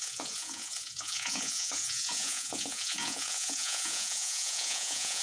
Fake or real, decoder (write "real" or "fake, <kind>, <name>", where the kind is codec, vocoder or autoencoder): fake, vocoder, Vocos